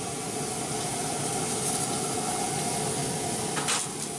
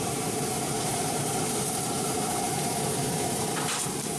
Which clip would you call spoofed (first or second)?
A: second